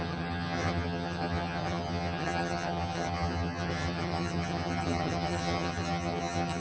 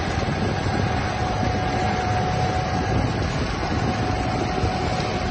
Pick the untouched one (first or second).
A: second